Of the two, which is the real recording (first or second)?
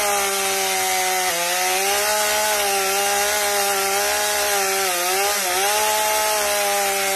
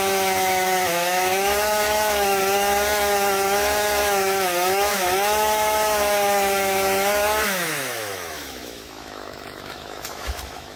first